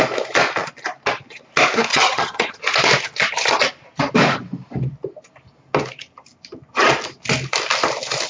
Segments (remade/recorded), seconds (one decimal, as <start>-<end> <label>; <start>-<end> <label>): 0.0-1.9 recorded; 1.9-2.6 remade; 2.6-8.3 recorded